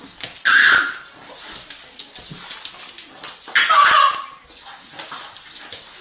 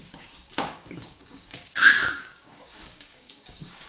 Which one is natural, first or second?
first